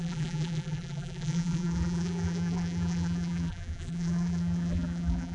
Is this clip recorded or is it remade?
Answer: remade